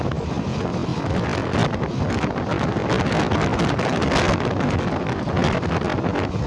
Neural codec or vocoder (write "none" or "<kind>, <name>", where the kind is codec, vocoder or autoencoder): none